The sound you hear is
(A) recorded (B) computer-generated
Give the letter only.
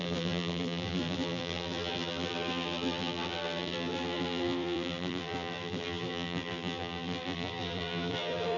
B